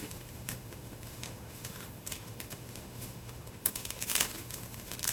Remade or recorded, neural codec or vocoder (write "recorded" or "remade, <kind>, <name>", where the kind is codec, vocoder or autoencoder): remade, autoencoder, DAC-VAE